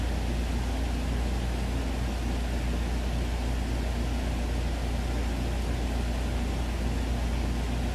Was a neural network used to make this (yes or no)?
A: no